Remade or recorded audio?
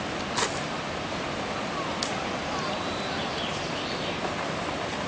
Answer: recorded